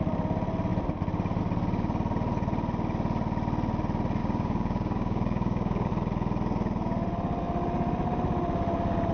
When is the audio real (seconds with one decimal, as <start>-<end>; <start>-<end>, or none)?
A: 0.0-4.2; 5.9-9.1